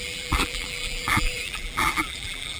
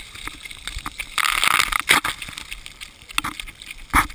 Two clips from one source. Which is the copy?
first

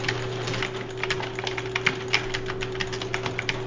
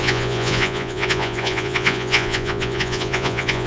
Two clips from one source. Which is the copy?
second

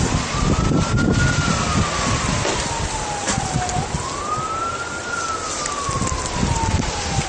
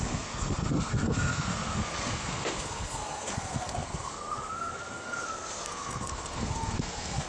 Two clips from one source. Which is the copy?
second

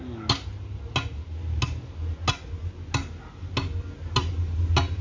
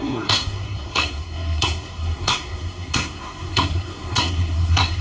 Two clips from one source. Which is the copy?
second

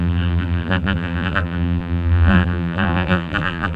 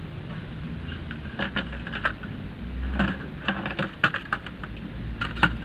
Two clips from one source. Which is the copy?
first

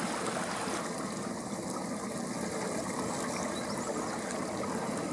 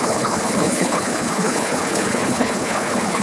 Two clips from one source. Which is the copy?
second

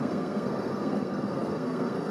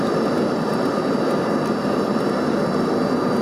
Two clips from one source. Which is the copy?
first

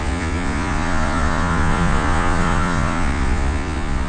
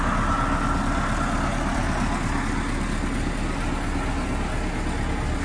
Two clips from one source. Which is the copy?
first